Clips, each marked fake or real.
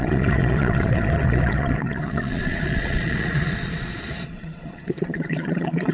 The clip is fake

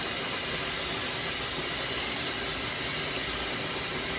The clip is real